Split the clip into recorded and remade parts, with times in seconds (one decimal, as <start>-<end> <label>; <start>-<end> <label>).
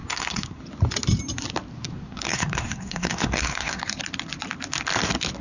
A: 0.0-0.6 remade; 0.6-1.7 recorded; 1.7-3.8 remade; 3.8-5.4 recorded